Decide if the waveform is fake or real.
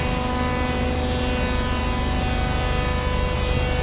real